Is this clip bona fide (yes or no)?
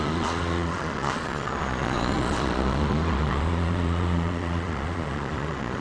no